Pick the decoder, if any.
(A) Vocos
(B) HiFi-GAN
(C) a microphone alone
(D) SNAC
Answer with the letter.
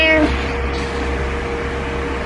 C